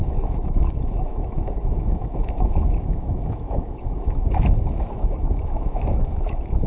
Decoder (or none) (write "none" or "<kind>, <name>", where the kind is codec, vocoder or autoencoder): autoencoder, DAC-VAE